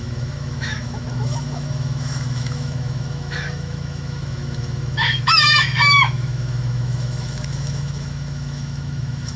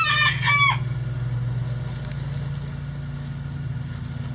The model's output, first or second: first